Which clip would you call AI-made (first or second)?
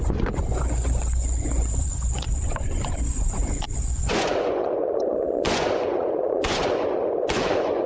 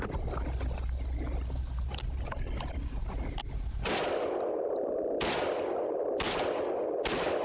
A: first